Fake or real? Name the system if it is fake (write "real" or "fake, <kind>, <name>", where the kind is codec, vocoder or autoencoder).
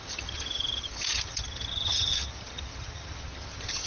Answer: fake, vocoder, HiFi-GAN